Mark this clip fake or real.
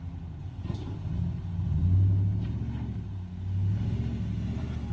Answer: real